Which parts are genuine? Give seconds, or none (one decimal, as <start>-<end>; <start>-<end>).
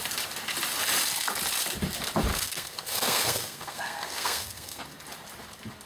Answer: 0.0-2.3; 4.8-5.9